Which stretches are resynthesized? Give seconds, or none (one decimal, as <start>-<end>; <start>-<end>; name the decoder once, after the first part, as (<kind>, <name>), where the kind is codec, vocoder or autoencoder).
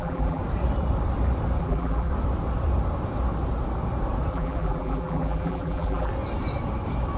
0.0-0.4 (vocoder, BigVGAN v2); 1.6-2.1; 4.3-6.1